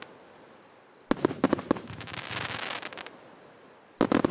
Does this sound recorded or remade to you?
recorded